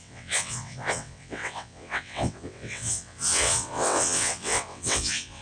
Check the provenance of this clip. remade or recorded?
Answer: remade